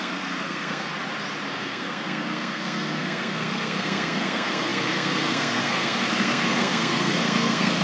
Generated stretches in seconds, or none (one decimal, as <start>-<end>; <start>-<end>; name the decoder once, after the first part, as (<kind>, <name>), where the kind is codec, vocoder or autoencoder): 0.0-0.9 (codec, SNAC); 1.5-7.8

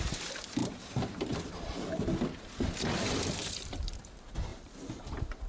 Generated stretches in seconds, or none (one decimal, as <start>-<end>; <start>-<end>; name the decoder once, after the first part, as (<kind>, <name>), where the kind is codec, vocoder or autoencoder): 0.6-1.3 (vocoder, BigVGAN v2); 3.4-3.9; 4.5-5.5

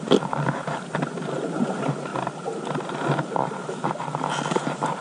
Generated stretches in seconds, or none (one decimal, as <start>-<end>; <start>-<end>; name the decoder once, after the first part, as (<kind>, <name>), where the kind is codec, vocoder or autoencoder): none